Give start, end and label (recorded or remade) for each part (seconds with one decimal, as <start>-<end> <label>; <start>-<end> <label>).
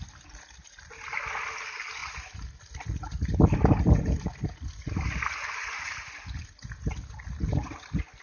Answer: 0.0-2.0 recorded; 2.0-3.8 remade; 3.8-8.2 recorded